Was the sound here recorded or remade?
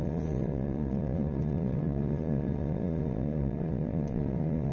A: remade